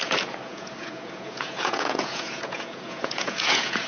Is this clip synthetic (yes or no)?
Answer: yes